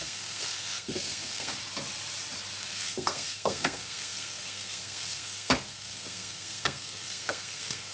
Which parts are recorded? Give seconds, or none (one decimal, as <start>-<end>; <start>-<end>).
1.5-2.6